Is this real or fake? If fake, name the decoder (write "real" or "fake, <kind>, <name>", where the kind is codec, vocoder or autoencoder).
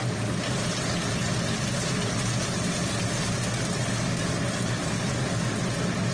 real